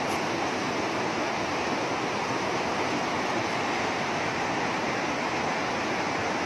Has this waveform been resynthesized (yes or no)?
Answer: no